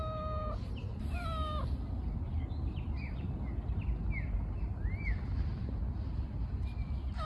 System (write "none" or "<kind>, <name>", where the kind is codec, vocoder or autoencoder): none